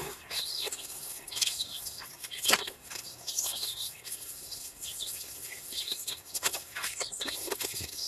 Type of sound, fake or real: fake